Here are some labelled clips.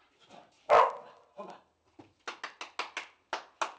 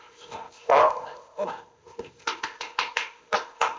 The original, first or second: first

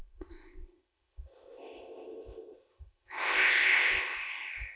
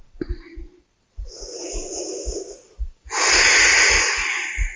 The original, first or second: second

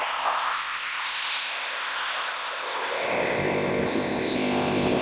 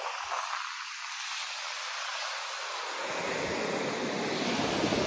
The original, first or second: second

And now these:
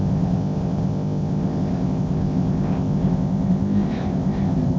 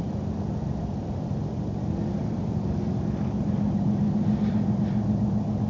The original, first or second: second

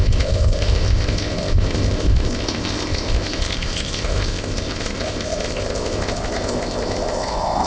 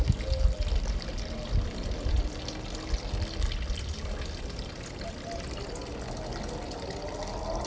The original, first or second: second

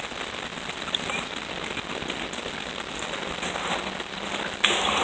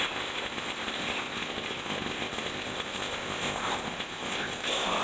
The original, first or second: first